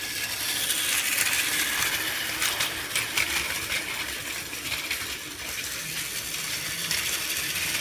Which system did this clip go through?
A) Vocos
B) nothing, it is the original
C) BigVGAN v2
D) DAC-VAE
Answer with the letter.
B